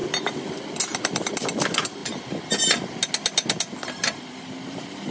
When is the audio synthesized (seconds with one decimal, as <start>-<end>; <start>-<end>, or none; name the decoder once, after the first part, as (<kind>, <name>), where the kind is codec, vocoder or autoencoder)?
0.8-2.0 (vocoder, BigVGAN v2)